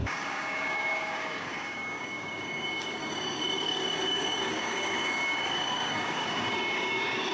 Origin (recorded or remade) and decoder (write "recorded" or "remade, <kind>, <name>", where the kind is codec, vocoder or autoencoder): remade, codec, DAC